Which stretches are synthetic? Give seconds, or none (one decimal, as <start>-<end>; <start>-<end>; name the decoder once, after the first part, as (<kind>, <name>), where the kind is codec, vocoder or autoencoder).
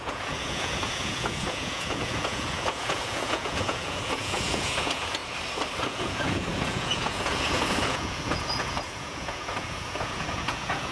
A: 0.0-5.2 (vocoder, Vocos); 5.8-10.9